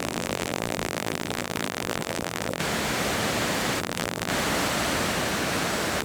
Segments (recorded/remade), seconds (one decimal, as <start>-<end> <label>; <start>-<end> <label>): 0.0-2.6 remade; 2.6-3.8 recorded; 3.8-4.3 remade; 4.3-6.0 recorded